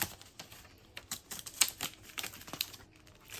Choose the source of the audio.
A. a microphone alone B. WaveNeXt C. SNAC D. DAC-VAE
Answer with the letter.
A